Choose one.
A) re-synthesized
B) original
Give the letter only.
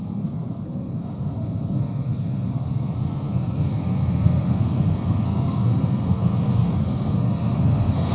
A